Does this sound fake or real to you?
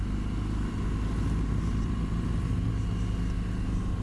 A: real